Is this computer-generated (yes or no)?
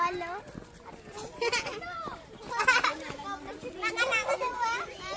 no